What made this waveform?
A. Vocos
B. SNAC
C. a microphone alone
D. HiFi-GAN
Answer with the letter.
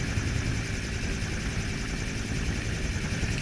C